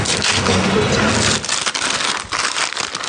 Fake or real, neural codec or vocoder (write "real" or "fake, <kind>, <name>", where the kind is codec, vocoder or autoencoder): real